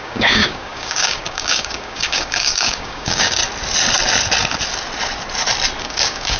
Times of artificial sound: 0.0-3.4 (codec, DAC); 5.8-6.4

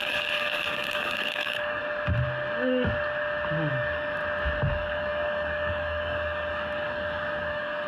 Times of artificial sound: 0.0-1.8 (codec, DAC); 3.7-4.2; 4.7-7.9

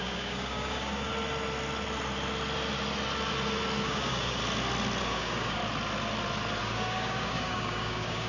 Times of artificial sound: 0.0-1.1 (codec, DAC); 3.8-4.4; 5.0-5.6; 6.6-8.3

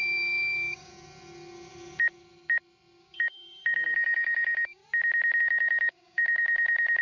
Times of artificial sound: 0.0-0.9 (codec, DAC); 3.0-4.8; 5.4-7.0

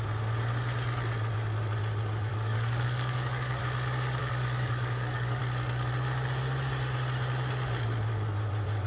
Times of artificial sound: 2.3-3.6 (codec, DAC); 4.2-5.4

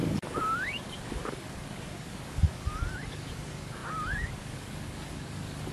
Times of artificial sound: 0.0-5.7 (codec, DAC)

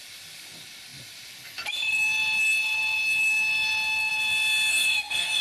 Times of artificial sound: 4.7-5.4 (codec, DAC)

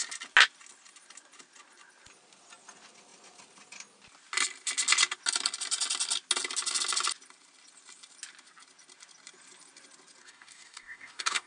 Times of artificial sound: 10.2-11.5 (codec, DAC)